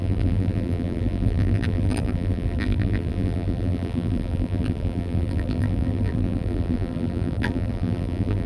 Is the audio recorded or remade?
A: remade